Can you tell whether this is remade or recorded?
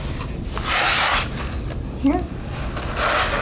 recorded